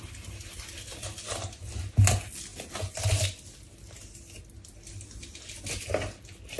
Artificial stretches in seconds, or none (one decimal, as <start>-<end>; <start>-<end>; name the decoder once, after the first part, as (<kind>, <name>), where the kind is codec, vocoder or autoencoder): none

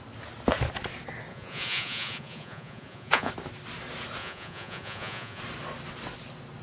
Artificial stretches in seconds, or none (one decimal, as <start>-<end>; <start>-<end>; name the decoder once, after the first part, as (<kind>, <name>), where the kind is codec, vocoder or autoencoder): 1.3-3.3 (vocoder, Vocos); 4.2-5.4

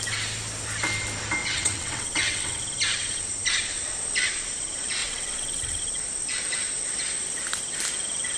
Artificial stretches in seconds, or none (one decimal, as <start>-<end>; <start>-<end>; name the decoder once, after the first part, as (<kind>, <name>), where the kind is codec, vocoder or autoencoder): 1.4-2.6 (vocoder, WaveNeXt); 5.0-5.8

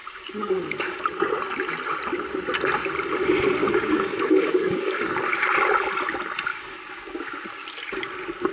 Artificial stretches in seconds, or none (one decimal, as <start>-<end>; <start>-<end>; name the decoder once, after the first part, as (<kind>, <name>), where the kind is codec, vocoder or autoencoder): 0.0-1.0 (codec, DAC); 3.6-5.1; 6.5-7.2

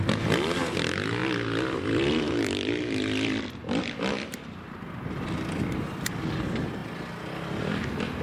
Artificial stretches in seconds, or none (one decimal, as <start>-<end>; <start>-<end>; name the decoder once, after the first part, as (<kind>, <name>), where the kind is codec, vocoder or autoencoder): none